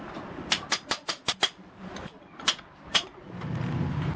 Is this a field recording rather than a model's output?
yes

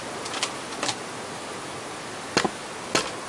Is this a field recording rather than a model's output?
yes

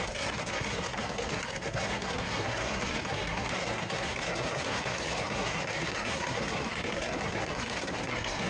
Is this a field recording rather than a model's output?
no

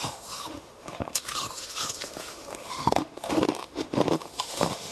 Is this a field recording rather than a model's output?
no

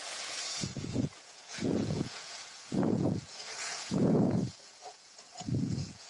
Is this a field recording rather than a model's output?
no